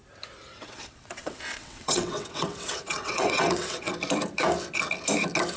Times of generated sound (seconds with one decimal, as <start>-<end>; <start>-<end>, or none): 0.5-3.9